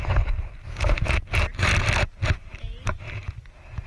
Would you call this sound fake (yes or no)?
no